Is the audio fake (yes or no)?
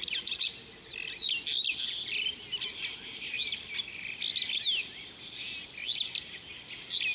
no